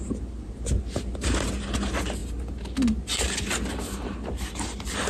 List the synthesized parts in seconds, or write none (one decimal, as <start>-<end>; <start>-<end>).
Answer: none